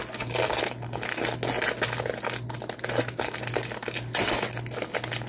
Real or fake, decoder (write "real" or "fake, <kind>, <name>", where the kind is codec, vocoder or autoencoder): real